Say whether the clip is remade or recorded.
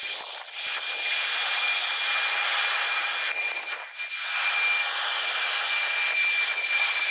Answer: recorded